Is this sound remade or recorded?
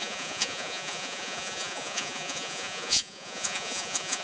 remade